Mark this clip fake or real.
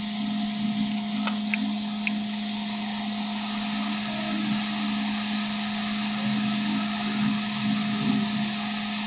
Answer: real